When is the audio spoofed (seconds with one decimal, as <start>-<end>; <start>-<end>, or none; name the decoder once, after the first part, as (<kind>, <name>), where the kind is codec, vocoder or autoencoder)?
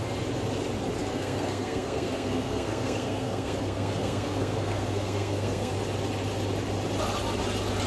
1.0-5.7 (codec, SNAC)